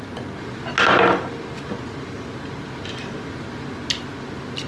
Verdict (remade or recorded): recorded